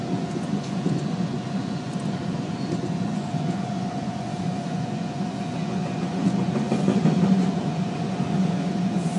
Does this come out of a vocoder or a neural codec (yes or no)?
yes